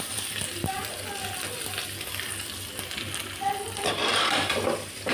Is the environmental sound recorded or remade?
remade